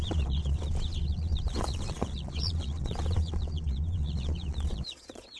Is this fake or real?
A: fake